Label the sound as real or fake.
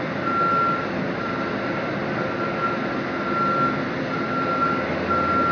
real